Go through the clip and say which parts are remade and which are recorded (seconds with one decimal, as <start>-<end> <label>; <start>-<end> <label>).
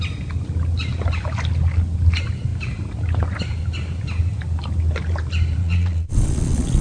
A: 0.0-5.6 recorded; 5.6-6.8 remade